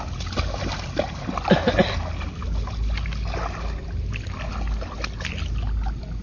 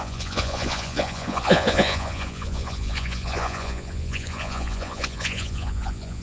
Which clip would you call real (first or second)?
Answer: first